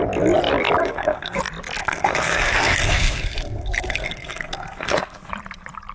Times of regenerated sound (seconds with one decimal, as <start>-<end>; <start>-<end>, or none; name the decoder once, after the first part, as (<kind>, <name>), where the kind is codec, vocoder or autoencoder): 0.8-1.4 (codec, SNAC); 1.8-5.3